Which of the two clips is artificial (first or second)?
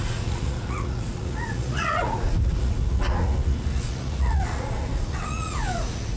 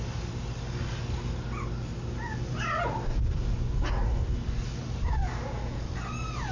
first